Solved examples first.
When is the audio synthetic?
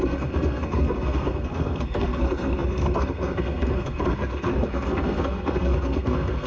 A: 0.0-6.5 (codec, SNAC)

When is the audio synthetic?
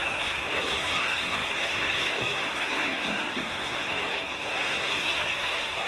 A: 0.0-5.9 (codec, SNAC)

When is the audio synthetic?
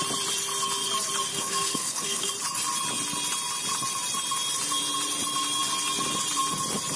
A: 1.3-2.3 (codec, SNAC)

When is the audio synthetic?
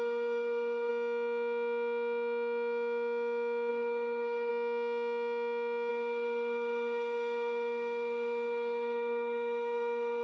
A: 0.0-0.9 (codec, SNAC); 3.7-4.5; 5.9-10.2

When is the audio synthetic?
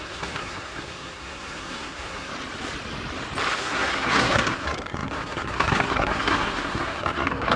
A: 0.0-2.3 (codec, SNAC); 3.6-7.6